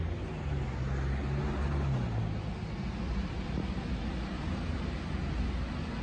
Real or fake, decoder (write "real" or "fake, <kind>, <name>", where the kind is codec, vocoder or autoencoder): real